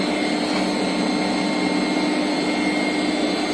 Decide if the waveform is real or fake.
real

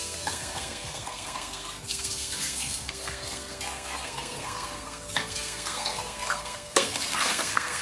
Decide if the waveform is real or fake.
fake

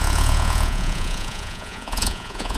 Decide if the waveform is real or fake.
fake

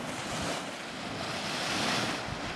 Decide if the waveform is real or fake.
real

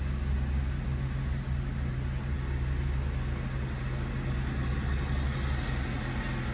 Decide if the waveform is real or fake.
real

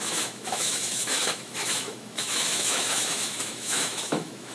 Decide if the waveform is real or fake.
fake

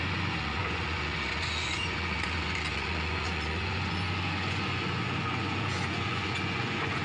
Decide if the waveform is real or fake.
fake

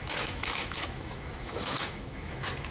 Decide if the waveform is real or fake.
fake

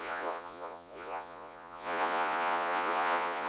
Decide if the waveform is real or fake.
fake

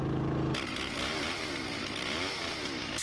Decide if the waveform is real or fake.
real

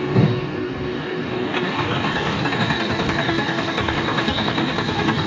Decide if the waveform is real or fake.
fake